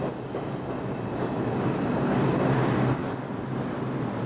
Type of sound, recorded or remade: recorded